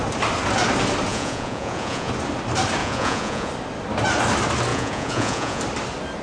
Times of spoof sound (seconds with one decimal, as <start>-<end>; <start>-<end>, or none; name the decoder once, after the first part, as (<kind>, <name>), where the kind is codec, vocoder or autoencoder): 1.1-2.1 (vocoder, Vocos); 2.8-3.5; 4.7-5.6